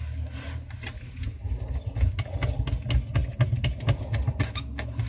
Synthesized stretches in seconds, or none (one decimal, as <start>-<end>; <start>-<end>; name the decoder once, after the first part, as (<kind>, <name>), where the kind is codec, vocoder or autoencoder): none